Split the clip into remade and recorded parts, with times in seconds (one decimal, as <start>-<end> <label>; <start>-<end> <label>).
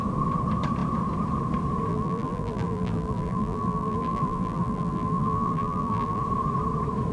0.0-1.9 recorded; 1.9-6.2 remade; 6.2-7.1 recorded